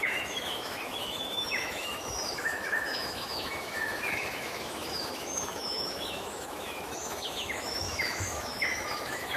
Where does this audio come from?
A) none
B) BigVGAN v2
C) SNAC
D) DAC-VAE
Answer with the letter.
D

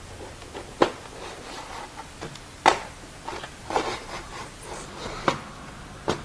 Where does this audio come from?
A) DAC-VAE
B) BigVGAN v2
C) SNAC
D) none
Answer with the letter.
D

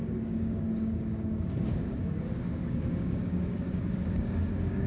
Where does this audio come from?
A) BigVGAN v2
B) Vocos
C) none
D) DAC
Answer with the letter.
D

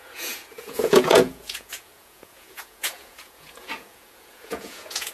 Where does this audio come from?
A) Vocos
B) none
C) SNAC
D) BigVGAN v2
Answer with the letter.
A